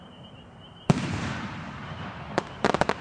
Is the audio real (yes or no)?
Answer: no